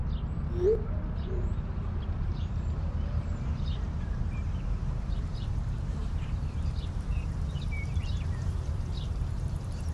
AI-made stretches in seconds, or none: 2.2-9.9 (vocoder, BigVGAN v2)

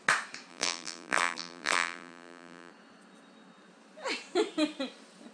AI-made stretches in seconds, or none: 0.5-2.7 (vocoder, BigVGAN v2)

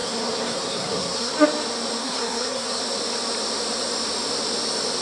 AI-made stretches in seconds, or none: 0.0-1.3 (codec, SNAC); 2.0-2.8

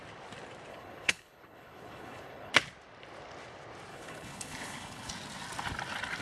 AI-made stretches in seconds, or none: 0.7-2.5 (codec, HILCodec); 3.9-5.1